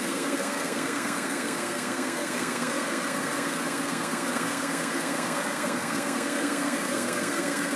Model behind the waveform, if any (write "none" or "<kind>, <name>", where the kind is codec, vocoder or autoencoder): codec, SNAC